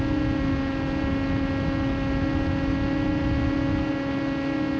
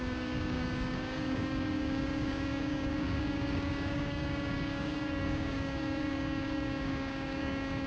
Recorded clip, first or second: first